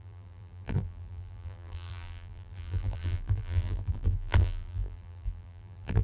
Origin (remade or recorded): remade